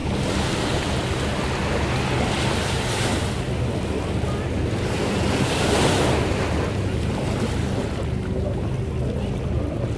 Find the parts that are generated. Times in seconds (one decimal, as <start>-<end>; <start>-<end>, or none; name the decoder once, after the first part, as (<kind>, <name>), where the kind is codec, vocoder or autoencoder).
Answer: none